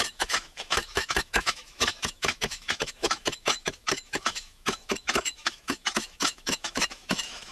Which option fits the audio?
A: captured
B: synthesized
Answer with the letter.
B